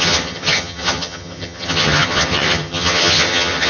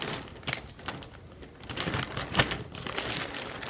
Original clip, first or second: second